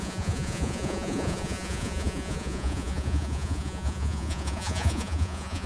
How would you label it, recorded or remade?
remade